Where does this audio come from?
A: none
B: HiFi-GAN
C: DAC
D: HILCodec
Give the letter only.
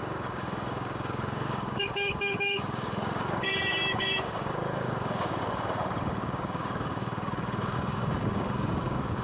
C